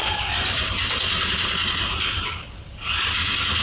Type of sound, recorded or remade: recorded